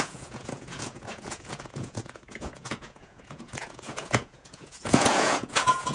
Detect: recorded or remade remade